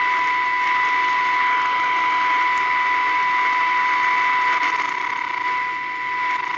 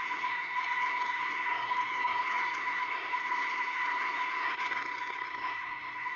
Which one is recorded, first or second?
first